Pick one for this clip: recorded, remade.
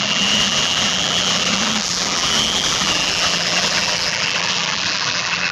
remade